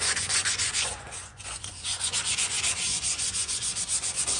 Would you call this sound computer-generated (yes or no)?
yes